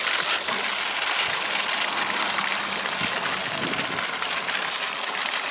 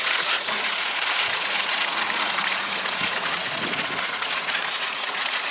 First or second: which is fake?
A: second